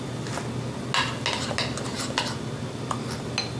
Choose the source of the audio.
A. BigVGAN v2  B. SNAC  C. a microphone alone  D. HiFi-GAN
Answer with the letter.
C